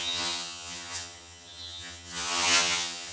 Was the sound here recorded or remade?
remade